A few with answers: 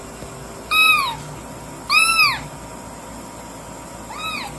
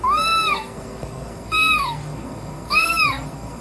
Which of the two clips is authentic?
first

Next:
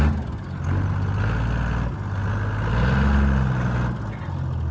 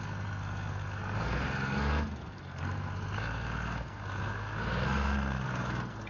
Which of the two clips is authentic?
first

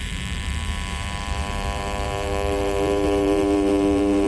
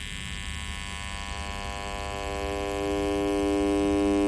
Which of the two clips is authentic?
second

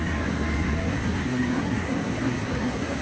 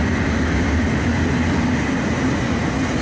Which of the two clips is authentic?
second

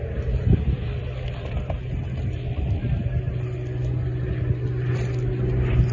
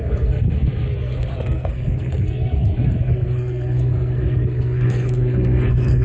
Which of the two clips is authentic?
first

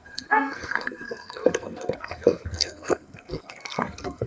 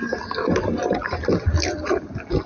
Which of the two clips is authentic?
second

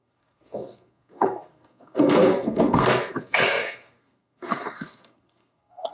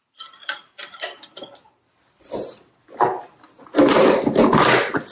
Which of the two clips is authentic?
second